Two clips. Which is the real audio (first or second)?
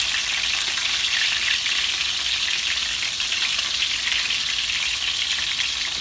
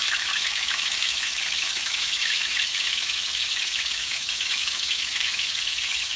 first